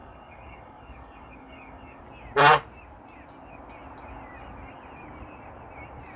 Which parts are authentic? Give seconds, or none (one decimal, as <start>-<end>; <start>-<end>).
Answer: 2.0-6.2